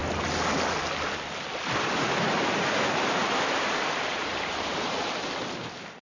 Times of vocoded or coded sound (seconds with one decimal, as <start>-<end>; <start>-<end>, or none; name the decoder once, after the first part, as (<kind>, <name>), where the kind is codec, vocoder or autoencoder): none